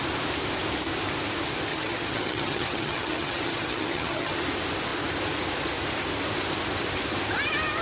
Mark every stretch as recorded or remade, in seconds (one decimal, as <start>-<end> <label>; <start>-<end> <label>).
0.0-1.7 recorded; 1.7-4.3 remade; 4.3-7.8 recorded